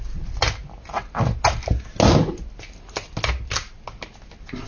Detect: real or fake real